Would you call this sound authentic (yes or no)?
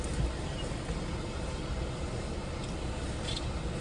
yes